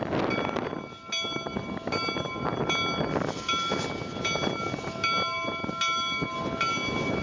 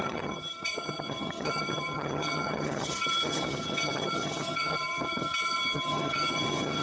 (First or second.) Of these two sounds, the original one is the first